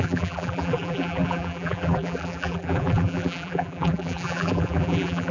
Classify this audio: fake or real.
fake